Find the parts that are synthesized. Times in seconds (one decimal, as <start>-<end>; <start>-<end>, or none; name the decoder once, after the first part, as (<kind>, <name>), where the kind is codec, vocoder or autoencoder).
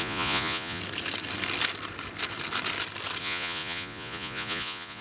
0.0-0.8 (vocoder, Vocos); 3.2-5.0